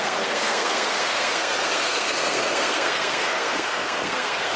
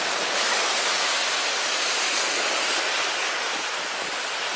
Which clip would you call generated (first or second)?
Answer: first